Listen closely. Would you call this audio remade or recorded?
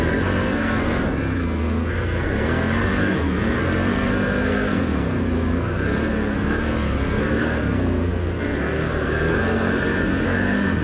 remade